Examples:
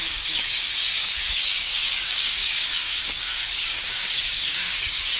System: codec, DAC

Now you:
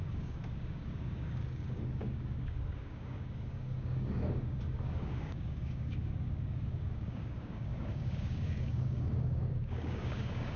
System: codec, DAC